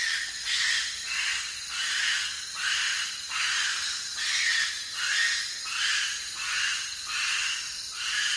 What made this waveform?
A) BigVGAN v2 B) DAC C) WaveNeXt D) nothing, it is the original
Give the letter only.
D